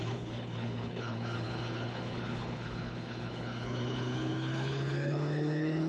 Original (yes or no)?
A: no